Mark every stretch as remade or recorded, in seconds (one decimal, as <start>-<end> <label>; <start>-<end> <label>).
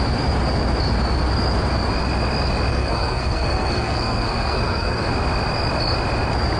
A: 0.0-2.7 recorded; 2.7-5.1 remade; 5.1-6.6 recorded